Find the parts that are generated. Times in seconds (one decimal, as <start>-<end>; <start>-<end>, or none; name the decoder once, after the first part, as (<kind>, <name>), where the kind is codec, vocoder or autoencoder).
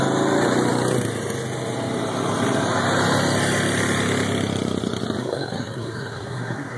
5.2-6.8 (codec, SNAC)